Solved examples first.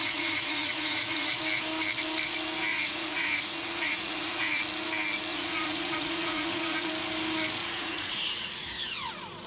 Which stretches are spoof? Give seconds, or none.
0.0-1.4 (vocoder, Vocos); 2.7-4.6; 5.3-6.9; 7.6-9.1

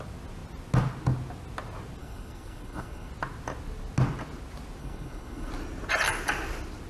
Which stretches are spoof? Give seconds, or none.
2.0-3.1 (codec, SNAC); 4.8-5.5

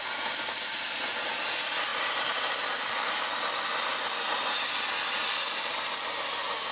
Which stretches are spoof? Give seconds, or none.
1.9-3.2 (vocoder, BigVGAN v2)

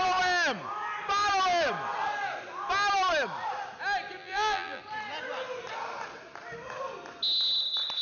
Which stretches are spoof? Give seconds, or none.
4.2-4.8 (vocoder, BigVGAN v2)

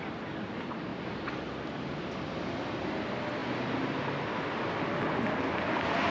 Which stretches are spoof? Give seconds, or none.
none